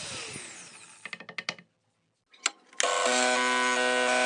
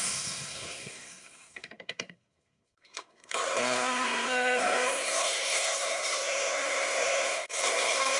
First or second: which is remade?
second